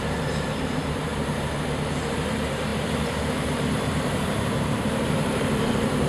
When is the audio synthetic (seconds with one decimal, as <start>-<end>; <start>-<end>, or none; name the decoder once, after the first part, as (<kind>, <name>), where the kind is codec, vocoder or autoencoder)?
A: 0.0-6.1 (vocoder, BigVGAN v2)

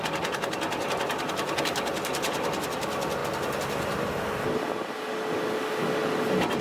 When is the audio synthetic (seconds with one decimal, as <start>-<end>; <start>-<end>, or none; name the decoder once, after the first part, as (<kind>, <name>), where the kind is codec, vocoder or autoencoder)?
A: none